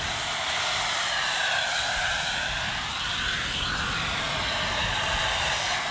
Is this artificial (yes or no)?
no